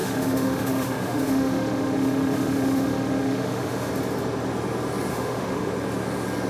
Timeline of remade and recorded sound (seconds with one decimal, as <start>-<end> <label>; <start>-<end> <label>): 0.0-3.9 remade; 3.9-5.1 recorded; 5.1-5.7 remade; 5.7-6.5 recorded